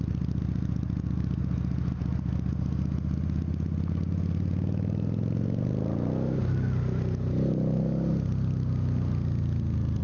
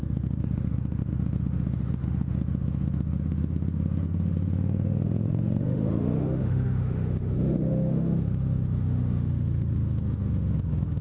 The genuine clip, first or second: first